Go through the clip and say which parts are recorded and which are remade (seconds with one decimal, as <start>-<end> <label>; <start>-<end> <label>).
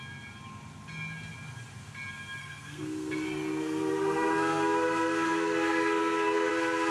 0.0-2.4 recorded; 2.4-6.5 remade; 6.5-6.9 recorded